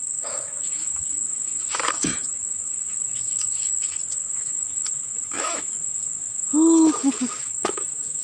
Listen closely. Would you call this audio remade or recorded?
remade